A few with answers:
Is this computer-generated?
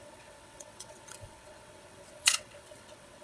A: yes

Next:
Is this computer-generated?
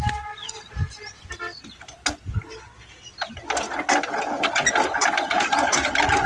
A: no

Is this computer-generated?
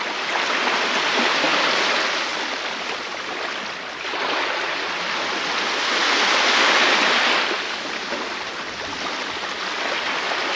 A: no